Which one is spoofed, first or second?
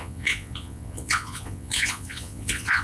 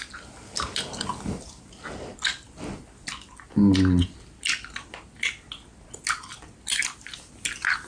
first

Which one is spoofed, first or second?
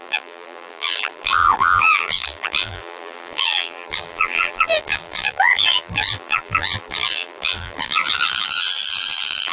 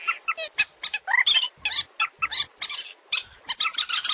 first